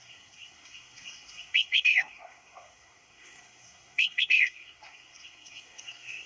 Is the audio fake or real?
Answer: fake